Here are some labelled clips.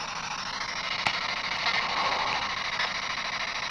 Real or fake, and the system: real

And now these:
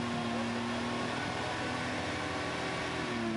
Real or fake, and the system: real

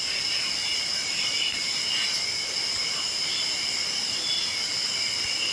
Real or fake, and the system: real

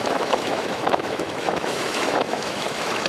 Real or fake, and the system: fake, autoencoder, DAC-VAE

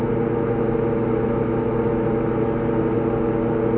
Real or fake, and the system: real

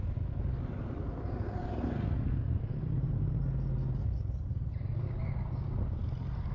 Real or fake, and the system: real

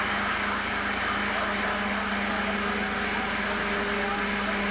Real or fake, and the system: real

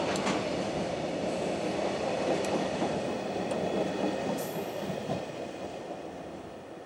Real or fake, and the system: real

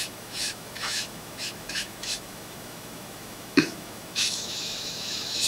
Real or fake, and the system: fake, autoencoder, DAC-VAE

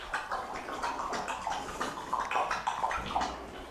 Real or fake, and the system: real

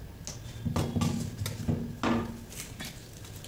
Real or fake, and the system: real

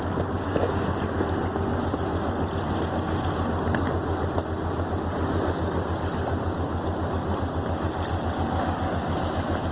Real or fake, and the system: real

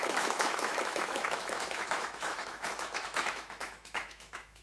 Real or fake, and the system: fake, autoencoder, DAC-VAE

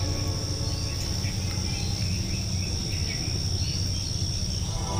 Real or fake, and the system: real